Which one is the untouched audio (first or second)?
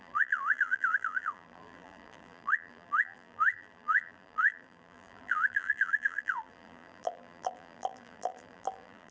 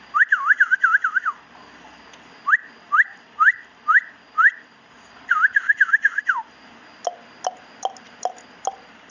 second